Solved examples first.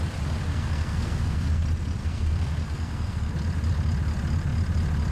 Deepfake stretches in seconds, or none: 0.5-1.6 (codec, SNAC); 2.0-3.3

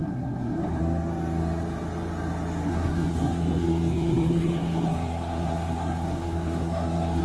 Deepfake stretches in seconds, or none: 0.0-0.8 (codec, SNAC); 2.7-7.2

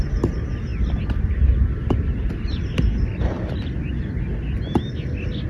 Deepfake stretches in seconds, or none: none

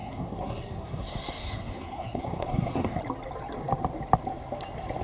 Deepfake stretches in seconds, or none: 0.0-3.0 (codec, SNAC)

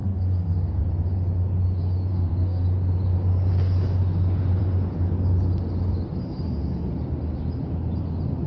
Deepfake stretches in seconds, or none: 0.0-0.8 (codec, SNAC); 2.1-2.6